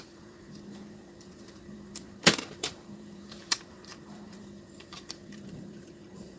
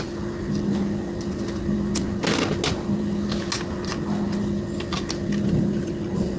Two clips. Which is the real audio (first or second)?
second